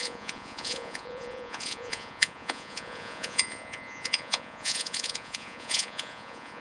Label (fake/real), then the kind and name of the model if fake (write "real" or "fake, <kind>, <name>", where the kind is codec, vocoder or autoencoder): fake, vocoder, Vocos